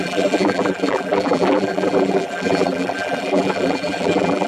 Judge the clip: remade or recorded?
remade